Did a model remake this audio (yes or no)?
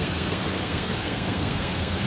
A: yes